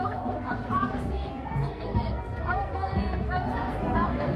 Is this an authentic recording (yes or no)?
no